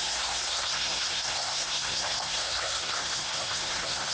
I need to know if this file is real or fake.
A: fake